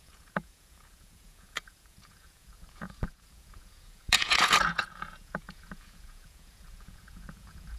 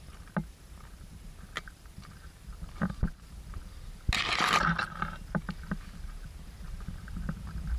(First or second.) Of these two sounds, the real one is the second